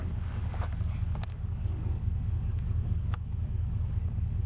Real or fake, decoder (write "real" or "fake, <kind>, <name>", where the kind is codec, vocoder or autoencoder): fake, codec, DAC